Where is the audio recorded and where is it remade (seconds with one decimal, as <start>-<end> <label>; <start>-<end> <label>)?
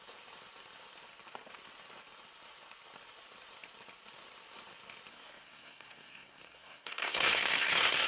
0.0-5.1 recorded; 5.1-8.1 remade